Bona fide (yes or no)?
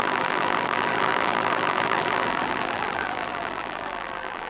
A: no